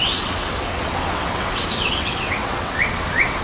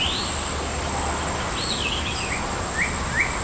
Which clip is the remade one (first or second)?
first